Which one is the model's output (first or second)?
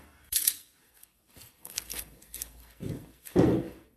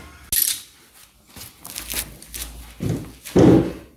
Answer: first